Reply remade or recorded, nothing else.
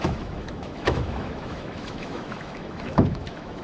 remade